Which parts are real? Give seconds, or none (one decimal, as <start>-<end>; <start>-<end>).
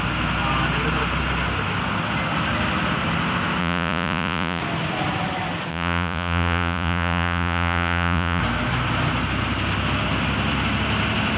0.0-3.6; 4.6-5.7; 8.4-11.4